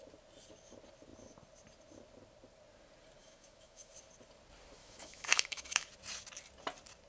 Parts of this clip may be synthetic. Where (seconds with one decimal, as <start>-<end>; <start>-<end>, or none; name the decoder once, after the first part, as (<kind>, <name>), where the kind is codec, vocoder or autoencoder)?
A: 3.2-3.9 (autoencoder, DAC-VAE); 4.8-5.9